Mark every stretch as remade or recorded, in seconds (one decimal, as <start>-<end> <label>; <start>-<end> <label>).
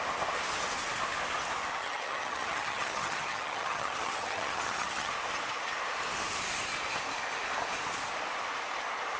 0.0-1.8 recorded; 1.8-5.1 remade; 5.1-9.2 recorded